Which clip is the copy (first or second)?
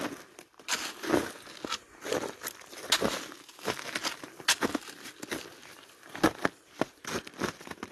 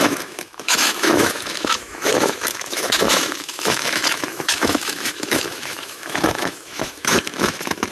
second